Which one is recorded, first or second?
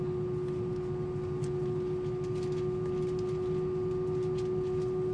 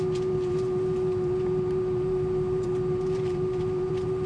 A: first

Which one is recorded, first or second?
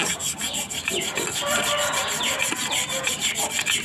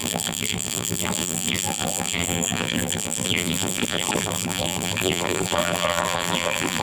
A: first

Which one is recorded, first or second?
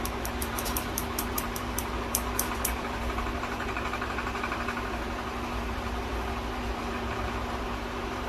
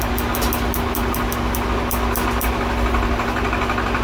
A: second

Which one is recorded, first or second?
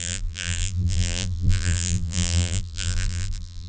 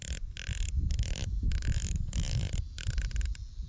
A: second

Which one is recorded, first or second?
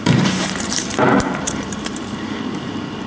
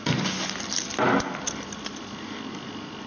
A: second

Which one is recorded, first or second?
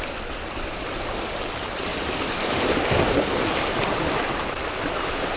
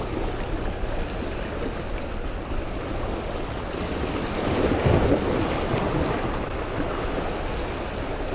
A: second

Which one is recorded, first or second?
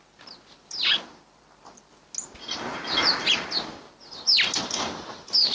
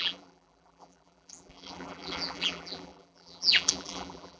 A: first